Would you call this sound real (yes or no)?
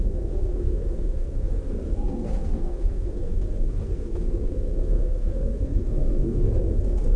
no